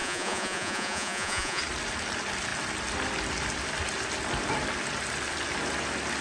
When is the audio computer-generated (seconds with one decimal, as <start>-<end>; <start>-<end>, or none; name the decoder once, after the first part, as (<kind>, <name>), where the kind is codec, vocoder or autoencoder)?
0.0-1.6 (vocoder, Vocos)